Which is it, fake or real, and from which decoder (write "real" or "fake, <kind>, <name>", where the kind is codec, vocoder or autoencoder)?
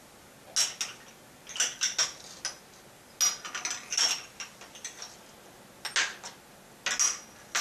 real